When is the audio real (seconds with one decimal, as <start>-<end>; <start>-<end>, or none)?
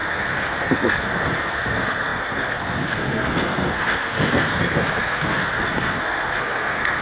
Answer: none